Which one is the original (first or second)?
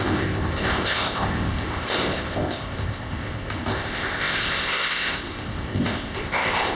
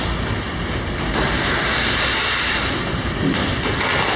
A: second